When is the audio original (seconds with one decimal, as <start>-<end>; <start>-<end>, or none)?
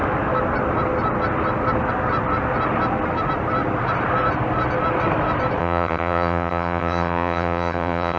0.0-5.6